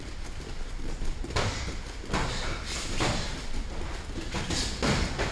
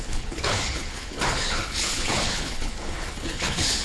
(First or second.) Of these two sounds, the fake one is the second